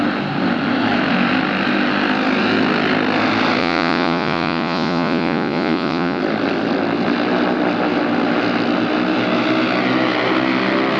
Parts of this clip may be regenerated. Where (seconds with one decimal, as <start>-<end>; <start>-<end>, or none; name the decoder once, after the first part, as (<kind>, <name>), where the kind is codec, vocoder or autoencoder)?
3.6-6.2 (vocoder, Vocos)